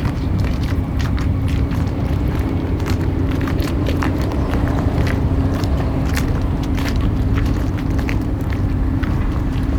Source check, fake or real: fake